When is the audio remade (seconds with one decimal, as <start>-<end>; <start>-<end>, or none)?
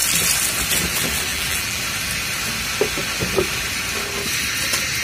1.3-1.8